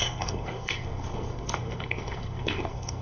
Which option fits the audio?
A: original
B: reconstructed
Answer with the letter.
B